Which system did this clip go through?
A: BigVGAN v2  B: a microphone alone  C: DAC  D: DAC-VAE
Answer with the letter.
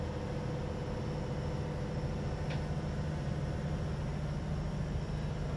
B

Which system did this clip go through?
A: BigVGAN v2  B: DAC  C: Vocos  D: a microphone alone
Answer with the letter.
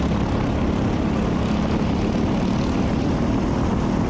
D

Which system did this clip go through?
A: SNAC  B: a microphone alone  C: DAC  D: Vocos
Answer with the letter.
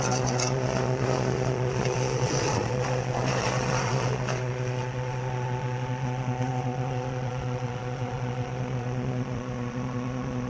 D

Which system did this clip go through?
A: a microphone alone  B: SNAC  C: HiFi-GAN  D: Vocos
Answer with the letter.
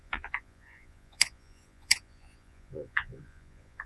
D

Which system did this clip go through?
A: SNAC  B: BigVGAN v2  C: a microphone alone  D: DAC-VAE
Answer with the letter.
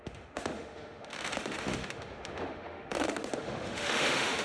D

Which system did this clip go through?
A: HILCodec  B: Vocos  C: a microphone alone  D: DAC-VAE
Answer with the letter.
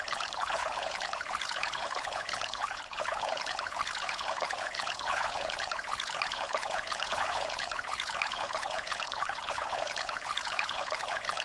A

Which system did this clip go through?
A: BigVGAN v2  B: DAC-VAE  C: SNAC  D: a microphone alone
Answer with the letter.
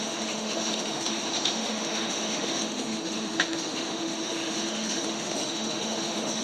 B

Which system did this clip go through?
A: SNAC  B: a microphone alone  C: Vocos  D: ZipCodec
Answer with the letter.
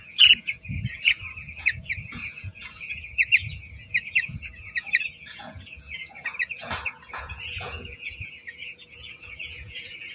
C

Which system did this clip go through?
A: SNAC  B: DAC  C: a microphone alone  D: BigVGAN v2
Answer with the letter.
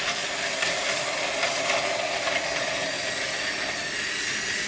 C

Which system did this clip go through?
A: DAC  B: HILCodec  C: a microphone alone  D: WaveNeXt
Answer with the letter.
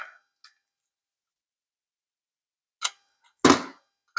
C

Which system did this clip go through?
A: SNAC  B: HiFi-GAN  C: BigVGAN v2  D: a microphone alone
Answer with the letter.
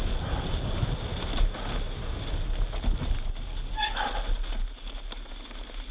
D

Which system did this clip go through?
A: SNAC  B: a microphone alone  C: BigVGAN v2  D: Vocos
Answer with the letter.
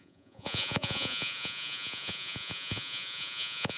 D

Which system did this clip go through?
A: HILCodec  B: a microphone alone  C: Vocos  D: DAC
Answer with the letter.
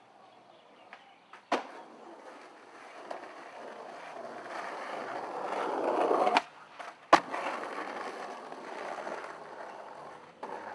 B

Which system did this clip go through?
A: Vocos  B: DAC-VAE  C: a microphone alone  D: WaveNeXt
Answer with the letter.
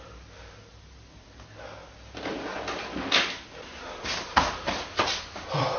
C